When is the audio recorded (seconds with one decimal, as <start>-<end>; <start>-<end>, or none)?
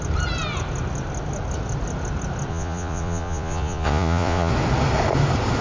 0.0-2.5; 4.5-5.6